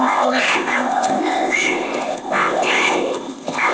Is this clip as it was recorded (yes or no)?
no